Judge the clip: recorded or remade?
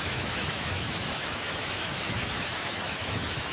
remade